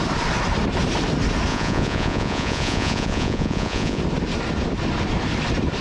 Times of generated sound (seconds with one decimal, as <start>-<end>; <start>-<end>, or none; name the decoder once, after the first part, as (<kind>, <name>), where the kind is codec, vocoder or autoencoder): 1.5-4.0 (vocoder, Vocos)